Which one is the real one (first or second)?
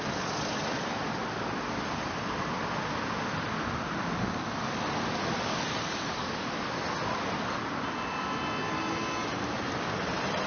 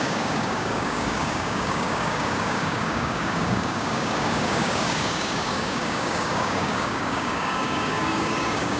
first